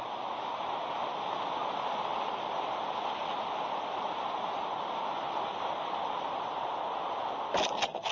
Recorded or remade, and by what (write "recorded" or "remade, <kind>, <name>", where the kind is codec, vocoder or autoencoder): recorded